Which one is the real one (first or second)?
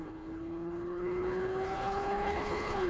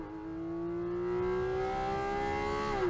second